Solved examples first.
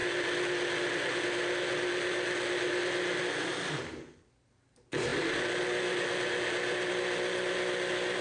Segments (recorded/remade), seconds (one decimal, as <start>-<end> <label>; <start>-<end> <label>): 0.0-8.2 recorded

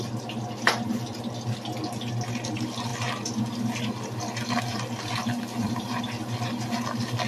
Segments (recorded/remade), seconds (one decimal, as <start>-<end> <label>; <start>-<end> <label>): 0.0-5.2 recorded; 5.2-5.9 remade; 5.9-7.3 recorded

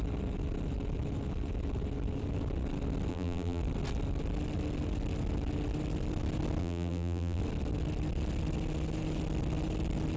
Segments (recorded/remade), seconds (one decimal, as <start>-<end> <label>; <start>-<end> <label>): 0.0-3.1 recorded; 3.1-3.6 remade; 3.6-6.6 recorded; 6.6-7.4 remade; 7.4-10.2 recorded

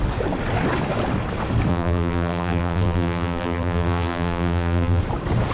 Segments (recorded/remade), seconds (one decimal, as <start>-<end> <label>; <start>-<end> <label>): 0.0-1.7 recorded; 1.7-5.0 remade; 5.0-5.5 recorded

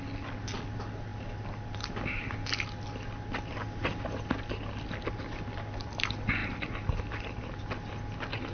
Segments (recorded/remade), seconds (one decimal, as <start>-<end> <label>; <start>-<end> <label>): 0.0-6.4 recorded; 6.4-7.7 remade; 7.7-8.5 recorded

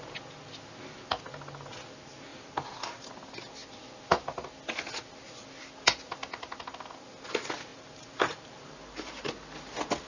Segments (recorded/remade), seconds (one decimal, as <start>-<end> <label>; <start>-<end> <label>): 0.0-2.3 recorded; 2.3-3.1 remade; 3.1-7.7 recorded; 7.7-9.1 remade; 9.1-10.1 recorded

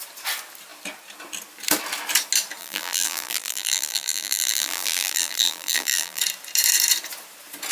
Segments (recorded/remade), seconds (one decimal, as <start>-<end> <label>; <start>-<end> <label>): 0.0-2.6 recorded; 2.6-6.2 remade; 6.2-7.7 recorded